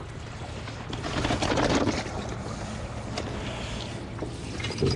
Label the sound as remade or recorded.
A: recorded